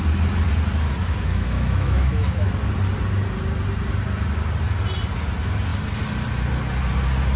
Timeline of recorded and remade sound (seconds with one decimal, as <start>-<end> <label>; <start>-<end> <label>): 0.0-1.0 recorded; 1.0-2.5 remade; 2.5-7.4 recorded